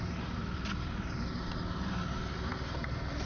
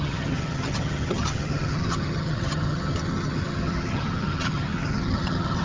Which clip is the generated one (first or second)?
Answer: second